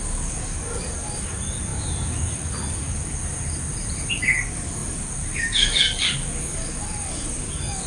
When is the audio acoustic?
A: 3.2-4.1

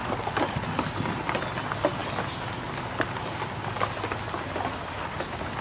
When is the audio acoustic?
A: 0.0-5.6

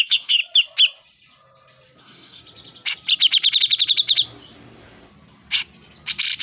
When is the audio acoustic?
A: 0.4-2.0; 2.4-6.4